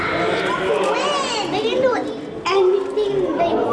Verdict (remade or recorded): recorded